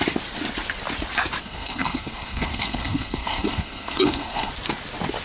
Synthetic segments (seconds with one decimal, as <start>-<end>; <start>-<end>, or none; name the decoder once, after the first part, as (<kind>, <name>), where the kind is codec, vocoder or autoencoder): 1.4-4.5 (codec, SNAC)